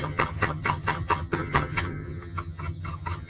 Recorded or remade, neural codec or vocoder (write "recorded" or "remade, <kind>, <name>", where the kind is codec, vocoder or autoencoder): remade, vocoder, HiFi-GAN